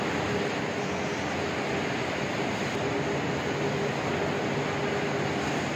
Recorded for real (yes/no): yes